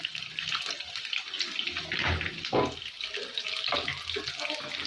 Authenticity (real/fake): real